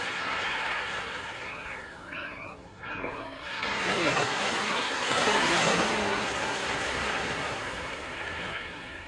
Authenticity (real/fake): fake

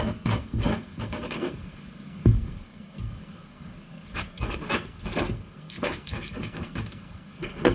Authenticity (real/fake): fake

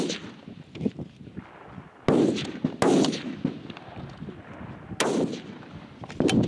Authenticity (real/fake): real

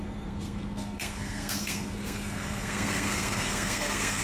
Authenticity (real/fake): fake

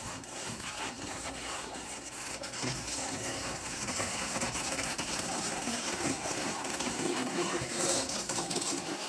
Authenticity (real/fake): fake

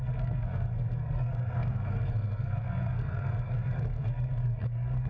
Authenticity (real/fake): fake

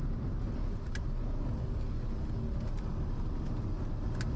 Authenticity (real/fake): real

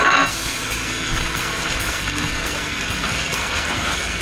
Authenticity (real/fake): fake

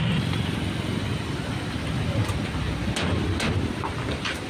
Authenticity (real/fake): real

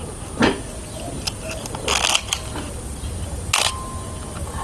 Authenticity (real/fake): real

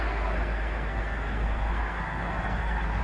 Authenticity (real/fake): fake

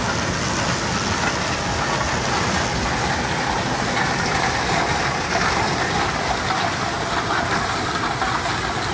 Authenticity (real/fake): real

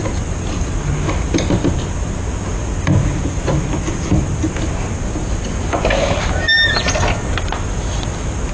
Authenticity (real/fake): real